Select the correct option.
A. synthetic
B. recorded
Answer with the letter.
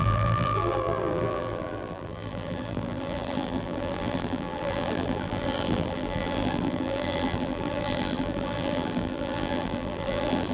A